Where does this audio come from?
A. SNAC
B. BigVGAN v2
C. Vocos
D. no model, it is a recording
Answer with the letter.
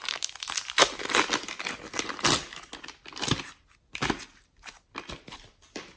D